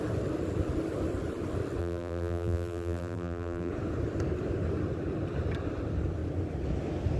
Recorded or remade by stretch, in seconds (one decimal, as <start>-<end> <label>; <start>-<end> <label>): 0.0-1.8 recorded; 1.8-3.7 remade; 3.7-7.2 recorded